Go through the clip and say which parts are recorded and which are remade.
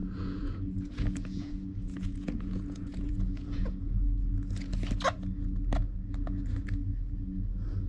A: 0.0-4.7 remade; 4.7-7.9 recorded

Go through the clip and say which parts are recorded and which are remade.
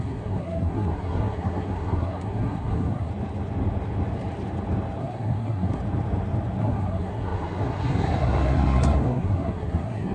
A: 0.0-3.1 remade; 3.1-5.0 recorded; 5.0-5.8 remade; 5.8-6.6 recorded; 6.6-10.1 remade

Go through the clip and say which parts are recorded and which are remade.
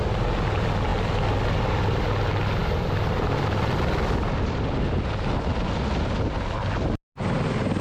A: 0.0-7.8 recorded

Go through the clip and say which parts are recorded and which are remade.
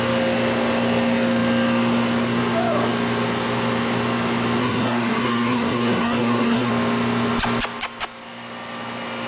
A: 0.0-4.6 recorded; 4.6-6.7 remade; 6.7-9.3 recorded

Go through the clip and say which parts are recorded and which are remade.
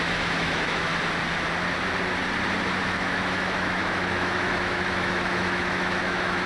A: 0.0-0.9 remade; 0.9-2.8 recorded; 2.8-6.5 remade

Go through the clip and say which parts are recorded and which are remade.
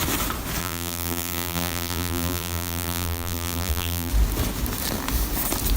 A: 0.0-0.6 recorded; 0.6-4.1 remade; 4.1-5.8 recorded